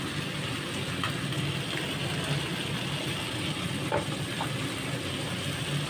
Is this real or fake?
real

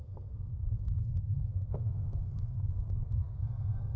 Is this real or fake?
fake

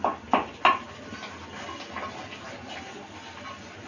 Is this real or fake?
real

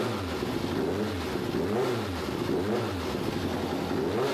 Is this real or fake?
real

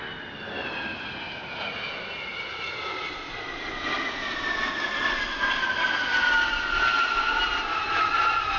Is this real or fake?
real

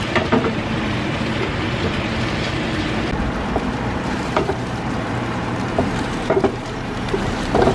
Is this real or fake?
fake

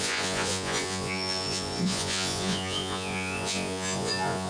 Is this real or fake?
fake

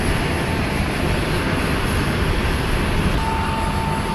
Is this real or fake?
real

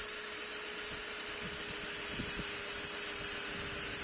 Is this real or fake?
real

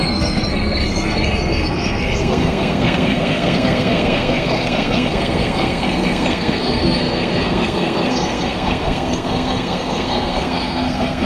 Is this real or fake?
fake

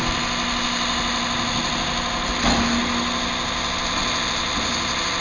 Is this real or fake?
real